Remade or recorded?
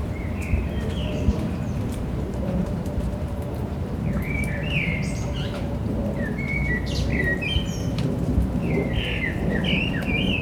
remade